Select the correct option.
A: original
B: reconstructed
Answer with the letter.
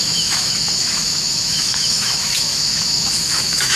B